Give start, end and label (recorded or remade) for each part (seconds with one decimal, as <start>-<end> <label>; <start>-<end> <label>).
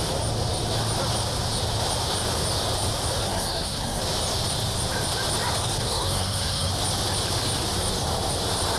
0.0-3.2 recorded; 3.2-4.0 remade; 4.0-5.6 recorded; 5.6-6.7 remade; 6.7-8.8 recorded